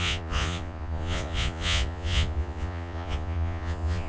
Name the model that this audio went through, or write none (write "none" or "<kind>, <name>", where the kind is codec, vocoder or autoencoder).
vocoder, Vocos